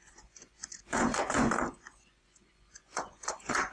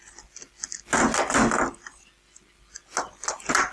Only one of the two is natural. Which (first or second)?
second